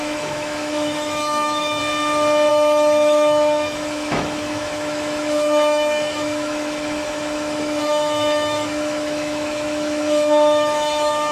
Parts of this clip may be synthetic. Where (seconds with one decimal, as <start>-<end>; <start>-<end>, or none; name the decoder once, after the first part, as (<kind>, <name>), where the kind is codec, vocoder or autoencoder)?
0.0-1.8 (autoencoder, DAC-VAE); 2.5-11.3